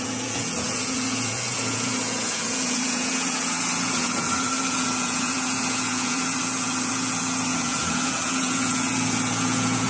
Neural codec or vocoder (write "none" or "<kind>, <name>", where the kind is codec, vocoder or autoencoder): vocoder, Vocos